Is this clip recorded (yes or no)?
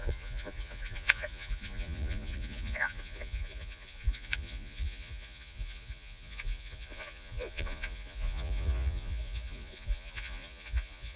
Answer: no